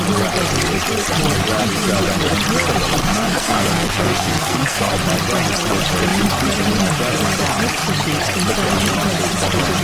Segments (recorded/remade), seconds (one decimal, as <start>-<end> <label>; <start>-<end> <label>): 0.0-3.0 recorded; 3.0-4.9 remade; 4.9-9.8 recorded